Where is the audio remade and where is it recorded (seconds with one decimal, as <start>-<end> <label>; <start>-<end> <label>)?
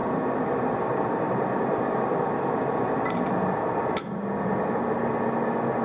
0.0-3.5 remade; 3.5-5.8 recorded